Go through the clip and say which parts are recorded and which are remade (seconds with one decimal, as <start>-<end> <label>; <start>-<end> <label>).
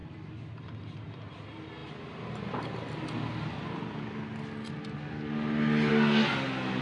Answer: 0.0-6.8 recorded